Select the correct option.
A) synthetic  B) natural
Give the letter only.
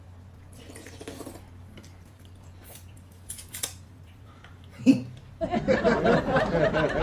A